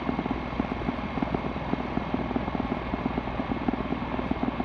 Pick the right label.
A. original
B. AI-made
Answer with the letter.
A